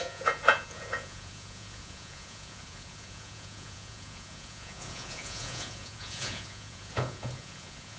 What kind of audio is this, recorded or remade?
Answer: remade